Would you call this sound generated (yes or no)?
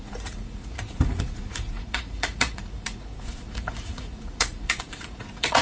yes